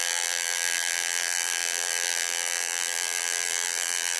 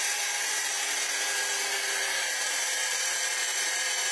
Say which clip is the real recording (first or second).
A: second